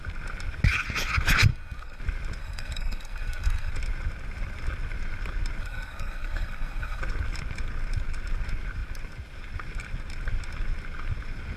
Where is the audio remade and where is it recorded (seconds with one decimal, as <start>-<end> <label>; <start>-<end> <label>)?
0.0-1.5 recorded; 1.5-2.0 remade; 2.0-2.4 recorded; 2.4-3.7 remade; 3.7-5.6 recorded; 5.6-7.0 remade; 7.0-11.6 recorded